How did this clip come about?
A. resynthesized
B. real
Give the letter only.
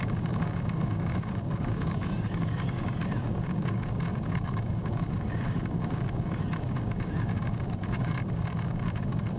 A